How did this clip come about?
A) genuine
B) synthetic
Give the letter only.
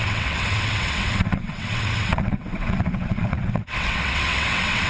B